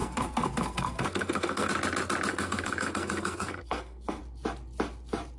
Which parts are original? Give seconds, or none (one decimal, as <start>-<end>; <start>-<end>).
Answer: 1.7-2.3; 4.2-5.4

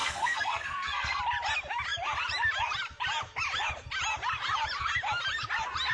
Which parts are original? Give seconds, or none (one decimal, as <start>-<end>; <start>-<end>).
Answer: 1.2-5.9

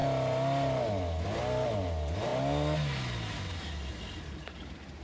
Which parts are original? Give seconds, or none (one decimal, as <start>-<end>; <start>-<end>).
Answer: 0.0-5.0

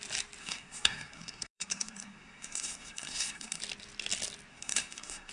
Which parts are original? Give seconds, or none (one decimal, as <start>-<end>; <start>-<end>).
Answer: 0.0-0.4; 3.6-4.5

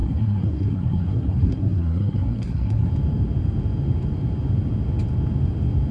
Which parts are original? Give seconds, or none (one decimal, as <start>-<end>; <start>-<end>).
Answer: 2.9-5.9

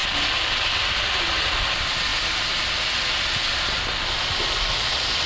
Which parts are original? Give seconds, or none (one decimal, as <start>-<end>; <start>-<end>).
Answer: 0.0-5.3

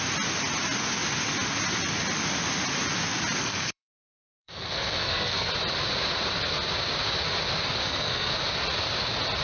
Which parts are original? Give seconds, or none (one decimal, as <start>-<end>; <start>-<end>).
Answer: 0.0-3.4; 5.5-7.8; 8.3-9.4